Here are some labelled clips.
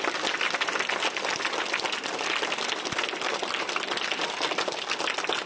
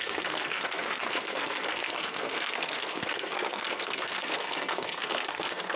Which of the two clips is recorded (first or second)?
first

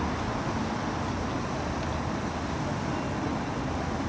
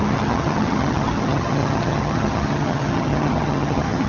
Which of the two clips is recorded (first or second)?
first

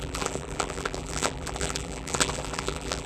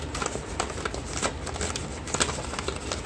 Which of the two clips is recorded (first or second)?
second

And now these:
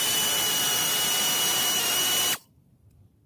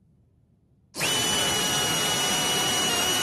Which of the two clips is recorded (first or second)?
second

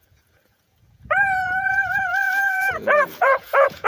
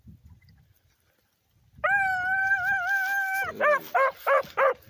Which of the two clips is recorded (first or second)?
second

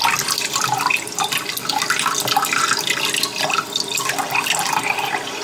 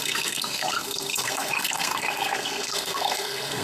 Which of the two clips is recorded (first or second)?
first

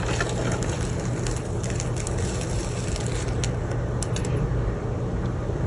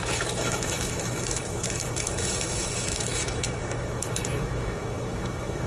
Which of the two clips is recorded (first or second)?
first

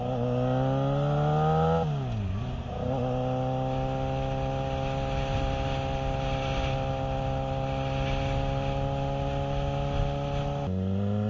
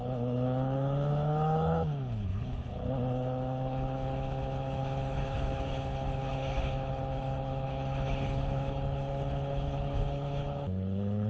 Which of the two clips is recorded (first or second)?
first